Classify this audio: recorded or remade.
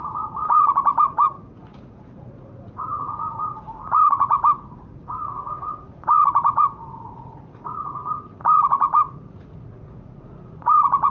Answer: remade